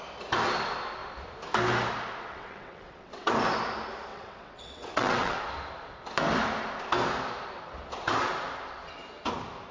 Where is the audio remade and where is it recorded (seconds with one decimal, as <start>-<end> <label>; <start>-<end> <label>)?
0.0-2.3 recorded; 2.3-3.3 remade; 3.3-4.1 recorded; 4.1-5.4 remade; 5.4-9.7 recorded